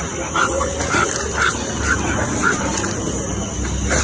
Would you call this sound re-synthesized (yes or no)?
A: no